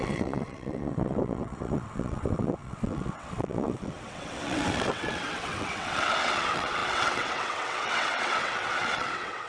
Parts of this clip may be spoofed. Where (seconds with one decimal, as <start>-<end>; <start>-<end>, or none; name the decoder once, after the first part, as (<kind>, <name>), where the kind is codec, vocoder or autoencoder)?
0.0-9.5 (vocoder, WaveNeXt)